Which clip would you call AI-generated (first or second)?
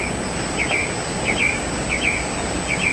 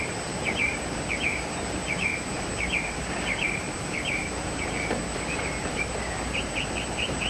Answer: second